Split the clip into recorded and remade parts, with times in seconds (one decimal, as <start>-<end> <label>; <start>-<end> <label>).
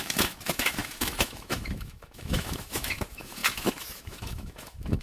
0.0-5.0 remade